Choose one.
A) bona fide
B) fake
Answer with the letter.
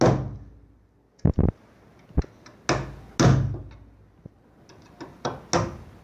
A